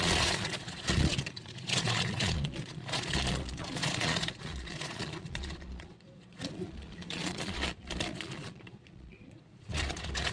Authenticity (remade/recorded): remade